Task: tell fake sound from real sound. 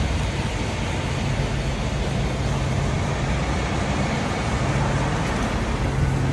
real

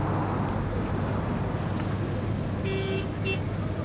real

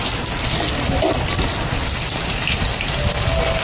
real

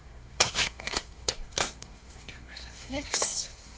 fake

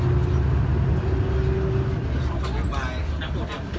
real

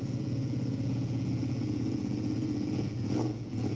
fake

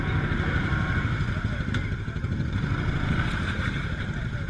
real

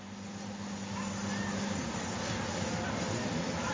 real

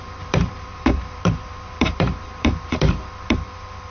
fake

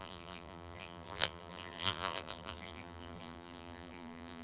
fake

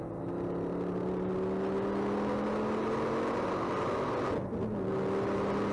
real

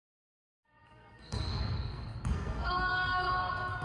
fake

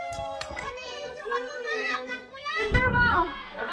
fake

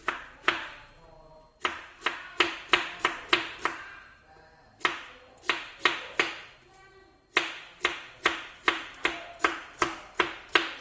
real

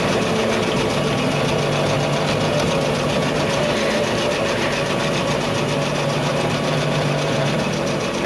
real